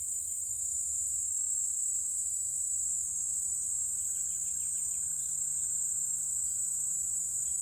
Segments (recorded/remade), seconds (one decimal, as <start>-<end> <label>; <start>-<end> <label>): 0.0-7.6 remade